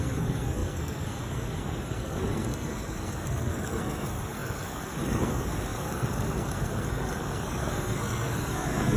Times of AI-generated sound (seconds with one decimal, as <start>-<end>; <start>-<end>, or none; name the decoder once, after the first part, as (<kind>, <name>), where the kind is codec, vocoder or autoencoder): 0.0-9.0 (codec, SNAC)